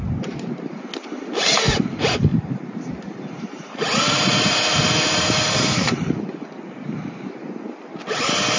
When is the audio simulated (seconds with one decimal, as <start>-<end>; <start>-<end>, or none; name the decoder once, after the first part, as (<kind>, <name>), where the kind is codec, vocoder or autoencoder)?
2.3-6.1 (vocoder, BigVGAN v2)